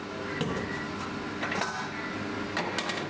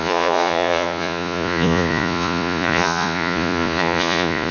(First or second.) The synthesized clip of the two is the second